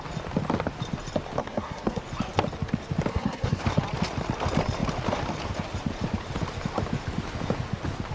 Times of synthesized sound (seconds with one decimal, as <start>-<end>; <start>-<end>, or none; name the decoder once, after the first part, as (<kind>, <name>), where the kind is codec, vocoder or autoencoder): 1.4-2.0 (codec, SNAC); 3.1-3.6